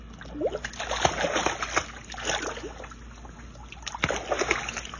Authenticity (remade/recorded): recorded